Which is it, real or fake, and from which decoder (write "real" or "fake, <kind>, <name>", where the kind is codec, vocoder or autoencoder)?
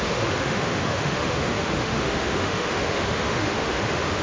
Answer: fake, autoencoder, DAC-VAE